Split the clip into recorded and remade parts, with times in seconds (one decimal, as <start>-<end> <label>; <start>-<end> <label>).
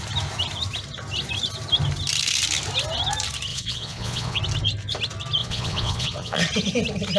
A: 0.0-3.5 recorded; 3.5-4.4 remade; 4.4-5.4 recorded; 5.4-6.4 remade; 6.4-7.2 recorded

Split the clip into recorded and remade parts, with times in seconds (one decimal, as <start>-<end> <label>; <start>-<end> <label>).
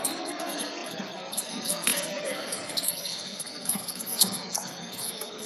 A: 0.0-5.5 remade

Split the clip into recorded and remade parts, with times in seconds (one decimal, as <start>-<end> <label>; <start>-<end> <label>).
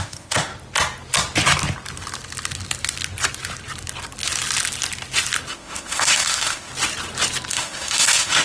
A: 0.0-0.5 remade; 0.5-5.5 recorded; 5.5-6.7 remade; 6.7-7.5 recorded; 7.5-8.4 remade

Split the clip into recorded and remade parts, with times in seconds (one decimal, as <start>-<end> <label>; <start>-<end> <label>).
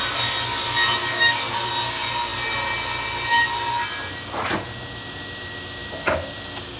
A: 0.0-1.1 recorded; 1.1-1.7 remade; 1.7-6.8 recorded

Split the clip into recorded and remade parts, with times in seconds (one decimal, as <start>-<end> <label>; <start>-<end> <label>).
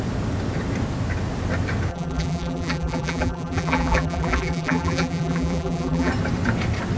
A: 0.0-1.9 recorded; 1.9-6.1 remade; 6.1-7.0 recorded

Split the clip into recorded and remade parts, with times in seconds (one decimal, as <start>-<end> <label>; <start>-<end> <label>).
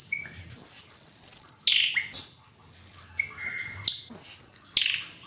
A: 0.0-5.3 recorded